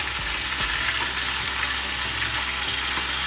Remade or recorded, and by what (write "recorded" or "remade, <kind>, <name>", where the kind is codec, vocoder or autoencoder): recorded